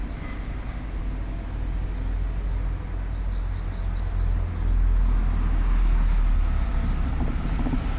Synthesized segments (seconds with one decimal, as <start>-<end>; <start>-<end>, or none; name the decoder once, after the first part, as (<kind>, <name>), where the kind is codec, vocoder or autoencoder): none